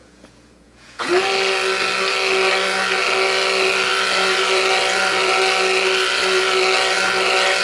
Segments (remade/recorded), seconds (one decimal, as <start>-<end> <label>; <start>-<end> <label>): 0.0-1.1 remade; 1.1-7.6 recorded